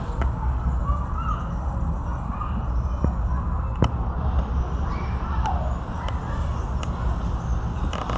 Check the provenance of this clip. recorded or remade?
recorded